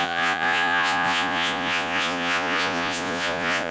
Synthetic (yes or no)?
yes